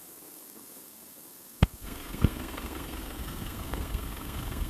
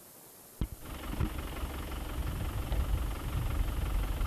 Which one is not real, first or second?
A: first